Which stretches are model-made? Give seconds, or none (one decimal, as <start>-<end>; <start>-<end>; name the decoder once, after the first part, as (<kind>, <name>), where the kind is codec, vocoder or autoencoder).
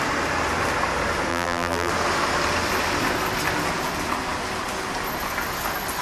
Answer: 1.3-1.9 (vocoder, BigVGAN v2)